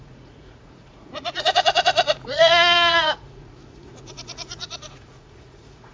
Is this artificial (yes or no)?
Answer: yes